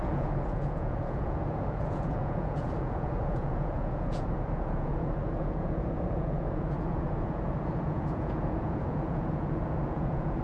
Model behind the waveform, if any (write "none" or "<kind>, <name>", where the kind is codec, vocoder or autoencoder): vocoder, Vocos